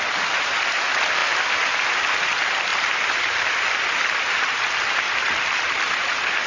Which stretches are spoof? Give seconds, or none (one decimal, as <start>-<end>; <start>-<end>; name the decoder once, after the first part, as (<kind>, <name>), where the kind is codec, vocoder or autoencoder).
none